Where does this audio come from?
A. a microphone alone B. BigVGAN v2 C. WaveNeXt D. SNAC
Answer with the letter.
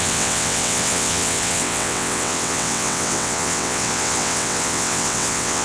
C